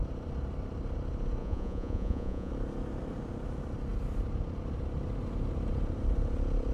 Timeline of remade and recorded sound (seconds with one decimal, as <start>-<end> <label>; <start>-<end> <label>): 0.0-1.4 recorded; 1.4-2.5 remade; 2.5-6.7 recorded